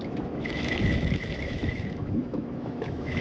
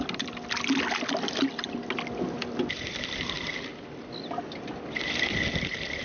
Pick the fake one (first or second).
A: first